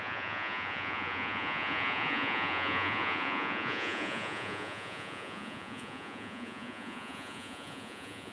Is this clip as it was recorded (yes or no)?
no